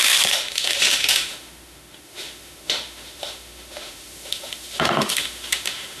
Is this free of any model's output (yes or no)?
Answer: no